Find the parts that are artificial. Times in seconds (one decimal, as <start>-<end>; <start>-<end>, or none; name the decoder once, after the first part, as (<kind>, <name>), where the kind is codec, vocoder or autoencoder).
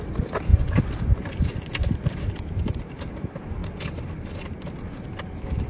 none